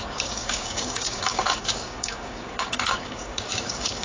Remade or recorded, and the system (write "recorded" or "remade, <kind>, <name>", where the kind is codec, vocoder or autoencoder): remade, codec, DAC